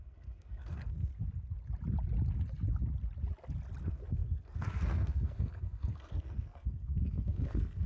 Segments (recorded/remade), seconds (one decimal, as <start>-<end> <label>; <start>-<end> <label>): 0.0-1.1 remade; 1.1-3.8 recorded; 3.8-7.9 remade